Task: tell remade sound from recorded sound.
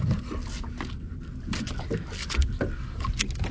recorded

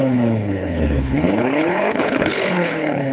remade